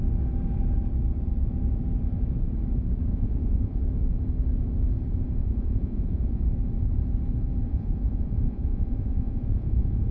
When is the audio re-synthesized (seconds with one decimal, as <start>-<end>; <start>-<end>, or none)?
3.1-3.8; 5.4-6.4; 7.7-10.1